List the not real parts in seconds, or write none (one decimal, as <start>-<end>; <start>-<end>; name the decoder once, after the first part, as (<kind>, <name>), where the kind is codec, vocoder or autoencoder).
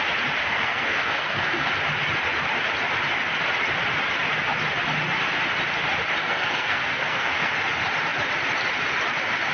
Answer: 0.4-1.7 (codec, SNAC); 6.2-7.5